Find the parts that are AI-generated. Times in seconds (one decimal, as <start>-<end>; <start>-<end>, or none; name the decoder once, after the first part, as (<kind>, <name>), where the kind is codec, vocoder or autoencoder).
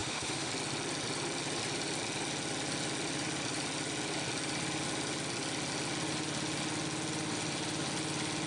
0.0-0.5 (autoencoder, DAC-VAE)